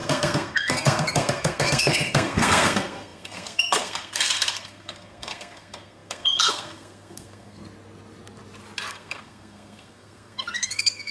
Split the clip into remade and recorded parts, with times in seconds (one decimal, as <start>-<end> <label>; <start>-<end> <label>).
0.0-7.6 remade; 7.6-8.9 recorded; 8.9-11.1 remade

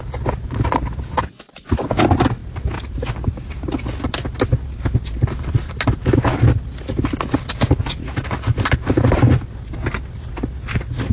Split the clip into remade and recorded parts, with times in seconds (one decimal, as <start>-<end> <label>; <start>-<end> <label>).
0.0-11.1 recorded

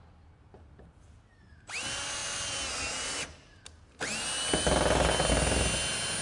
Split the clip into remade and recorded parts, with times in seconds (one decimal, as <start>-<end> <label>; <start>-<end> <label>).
0.0-6.2 recorded

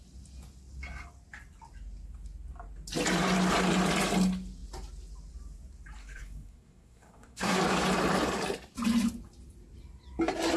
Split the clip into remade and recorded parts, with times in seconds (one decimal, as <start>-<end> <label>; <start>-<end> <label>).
0.0-6.0 recorded; 6.0-7.6 remade; 7.6-10.6 recorded

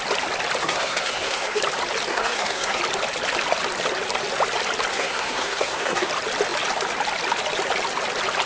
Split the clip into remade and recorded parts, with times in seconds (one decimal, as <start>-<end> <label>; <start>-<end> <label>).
0.0-0.6 recorded; 0.6-1.6 remade; 1.6-2.1 recorded; 2.1-2.8 remade; 2.8-4.9 recorded; 4.9-6.1 remade; 6.1-8.5 recorded

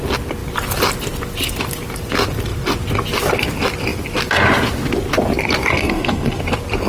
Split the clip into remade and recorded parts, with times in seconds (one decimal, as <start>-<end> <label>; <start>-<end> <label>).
0.0-5.7 recorded; 5.7-6.4 remade; 6.4-6.9 recorded

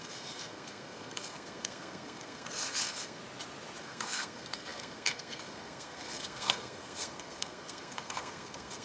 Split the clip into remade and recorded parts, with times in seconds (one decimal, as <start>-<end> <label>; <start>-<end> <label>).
0.0-3.2 remade; 3.2-3.8 recorded; 3.8-8.8 remade

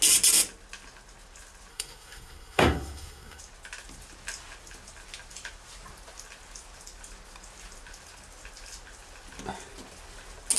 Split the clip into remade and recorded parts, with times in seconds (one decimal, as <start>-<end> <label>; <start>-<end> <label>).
0.0-1.7 recorded; 1.7-3.4 remade; 3.4-10.6 recorded